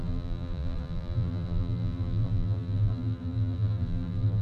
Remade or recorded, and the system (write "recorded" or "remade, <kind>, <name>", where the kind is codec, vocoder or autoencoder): remade, vocoder, BigVGAN v2